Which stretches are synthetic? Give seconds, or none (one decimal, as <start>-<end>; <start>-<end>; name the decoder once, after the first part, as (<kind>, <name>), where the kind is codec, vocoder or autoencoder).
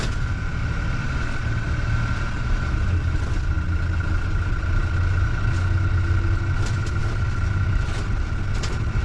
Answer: none